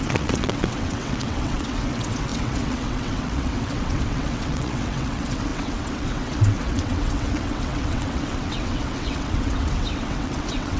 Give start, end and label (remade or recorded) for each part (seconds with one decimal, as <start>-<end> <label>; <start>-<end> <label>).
0.0-10.8 remade